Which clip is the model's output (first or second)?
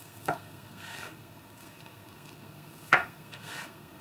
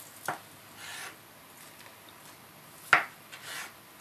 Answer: first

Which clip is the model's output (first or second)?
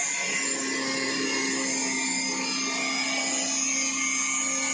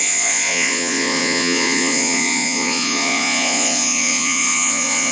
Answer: second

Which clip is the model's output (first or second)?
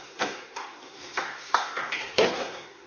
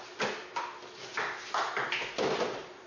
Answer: first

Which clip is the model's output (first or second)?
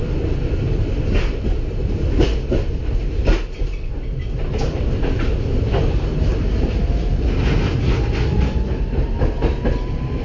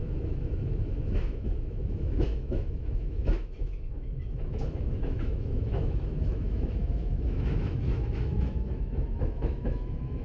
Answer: second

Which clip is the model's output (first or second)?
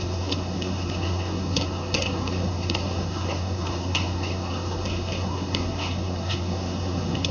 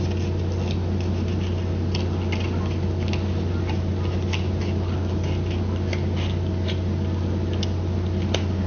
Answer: first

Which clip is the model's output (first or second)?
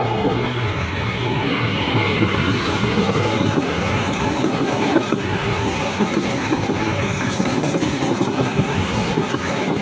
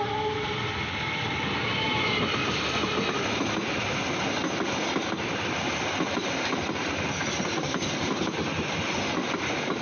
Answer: first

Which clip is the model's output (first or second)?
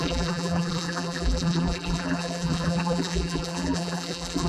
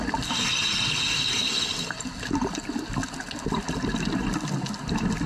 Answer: first